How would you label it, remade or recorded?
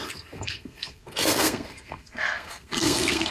remade